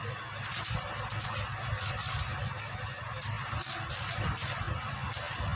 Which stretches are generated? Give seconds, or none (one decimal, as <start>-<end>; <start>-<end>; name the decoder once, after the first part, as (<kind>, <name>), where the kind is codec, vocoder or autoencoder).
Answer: 2.0-5.6 (vocoder, BigVGAN v2)